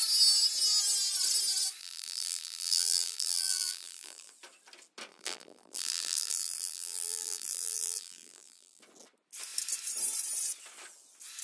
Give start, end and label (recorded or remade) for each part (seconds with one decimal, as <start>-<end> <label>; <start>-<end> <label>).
0.0-1.8 recorded; 1.8-4.3 remade; 4.3-5.1 recorded; 5.1-8.8 remade; 8.8-11.4 recorded